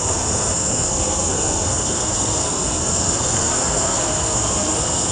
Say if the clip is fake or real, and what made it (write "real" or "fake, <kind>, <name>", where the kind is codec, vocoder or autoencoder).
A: fake, codec, SNAC